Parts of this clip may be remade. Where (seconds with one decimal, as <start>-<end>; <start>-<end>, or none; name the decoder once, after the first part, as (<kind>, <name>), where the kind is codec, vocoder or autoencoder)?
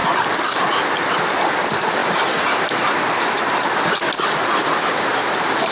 0.0-0.6 (vocoder, BigVGAN v2)